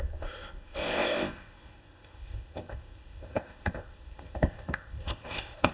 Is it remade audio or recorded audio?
remade